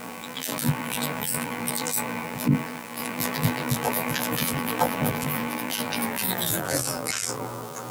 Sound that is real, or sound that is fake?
fake